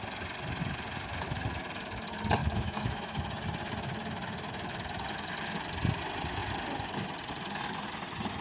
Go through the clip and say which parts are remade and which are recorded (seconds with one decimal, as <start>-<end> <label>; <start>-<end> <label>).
0.0-2.4 recorded; 2.4-3.2 remade; 3.2-8.4 recorded